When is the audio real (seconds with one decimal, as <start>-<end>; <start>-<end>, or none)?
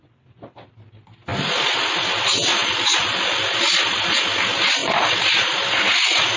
0.0-6.4